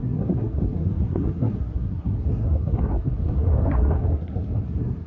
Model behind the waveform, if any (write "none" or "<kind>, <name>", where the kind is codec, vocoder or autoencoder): codec, SNAC